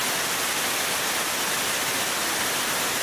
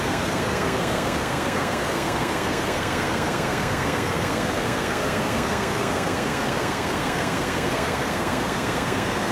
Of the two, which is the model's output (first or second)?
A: second